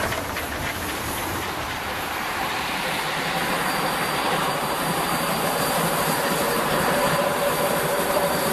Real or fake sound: fake